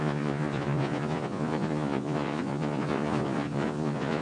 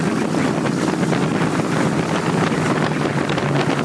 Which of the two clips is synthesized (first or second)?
first